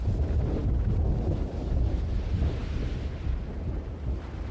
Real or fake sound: real